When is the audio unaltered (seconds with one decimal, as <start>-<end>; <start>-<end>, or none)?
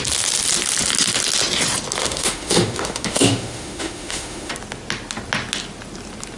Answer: 0.0-2.0; 4.5-6.4